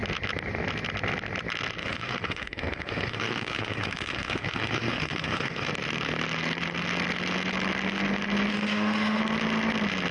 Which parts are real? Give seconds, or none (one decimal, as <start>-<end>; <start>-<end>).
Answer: 0.0-1.8; 5.7-8.5; 9.2-10.1

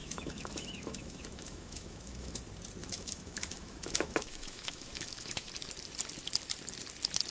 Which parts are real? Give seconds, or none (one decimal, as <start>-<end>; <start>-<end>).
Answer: 2.4-2.8; 5.5-7.3

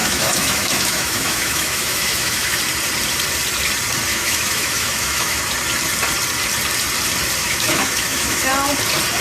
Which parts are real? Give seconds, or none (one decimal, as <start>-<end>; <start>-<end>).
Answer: 2.6-4.1; 5.4-7.4; 8.5-9.2

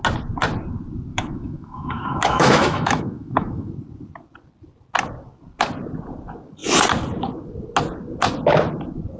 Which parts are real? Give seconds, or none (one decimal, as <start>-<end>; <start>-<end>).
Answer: 0.0-1.1; 3.7-9.2

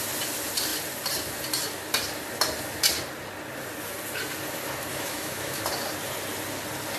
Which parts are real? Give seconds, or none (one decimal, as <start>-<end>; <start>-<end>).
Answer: 0.0-4.9; 5.6-7.0

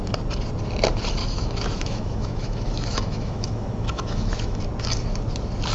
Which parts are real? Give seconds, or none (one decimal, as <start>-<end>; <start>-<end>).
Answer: 0.0-1.2; 4.6-5.7

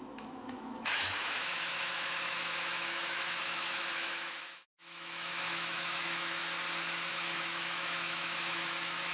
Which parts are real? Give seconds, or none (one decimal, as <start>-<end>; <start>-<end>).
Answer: 6.4-7.1